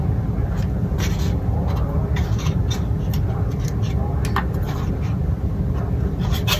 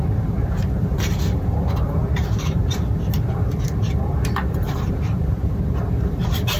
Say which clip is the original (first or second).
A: first